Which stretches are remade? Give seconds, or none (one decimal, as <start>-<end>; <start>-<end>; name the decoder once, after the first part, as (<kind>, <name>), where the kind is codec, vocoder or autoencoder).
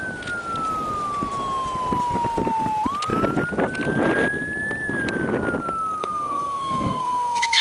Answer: 6.0-7.6 (codec, SNAC)